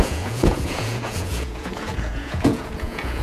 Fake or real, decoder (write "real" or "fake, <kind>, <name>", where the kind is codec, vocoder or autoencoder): fake, vocoder, Vocos